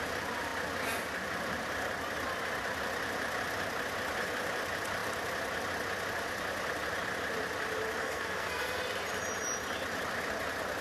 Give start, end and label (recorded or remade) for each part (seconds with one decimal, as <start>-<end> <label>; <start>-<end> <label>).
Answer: 0.0-8.0 recorded; 8.0-8.8 remade; 8.8-10.8 recorded